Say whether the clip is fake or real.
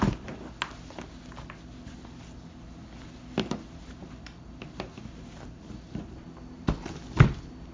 real